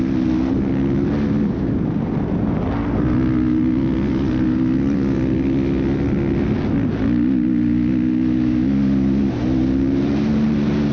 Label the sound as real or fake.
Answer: real